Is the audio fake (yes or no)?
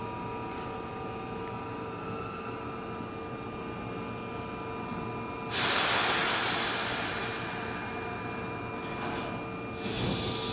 no